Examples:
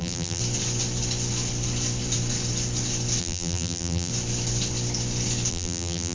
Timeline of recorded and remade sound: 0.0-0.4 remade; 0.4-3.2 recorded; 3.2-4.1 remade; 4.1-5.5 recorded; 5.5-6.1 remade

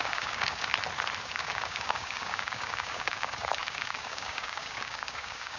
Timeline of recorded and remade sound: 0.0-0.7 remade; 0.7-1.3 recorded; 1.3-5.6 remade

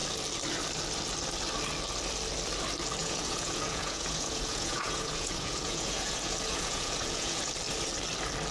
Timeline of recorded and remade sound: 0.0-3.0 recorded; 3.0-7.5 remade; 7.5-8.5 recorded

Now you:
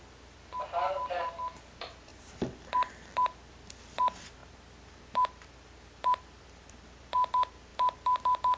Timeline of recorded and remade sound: 0.0-2.1 recorded; 2.1-2.9 remade; 2.9-4.4 recorded; 4.4-7.0 remade; 7.0-8.6 recorded

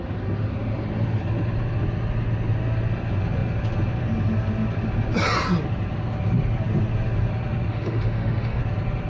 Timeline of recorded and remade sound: 0.0-7.7 recorded; 7.7-8.6 remade; 8.6-9.1 recorded

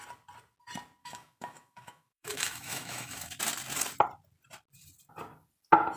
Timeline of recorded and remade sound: 0.0-1.0 recorded; 1.0-3.4 remade; 3.4-6.0 recorded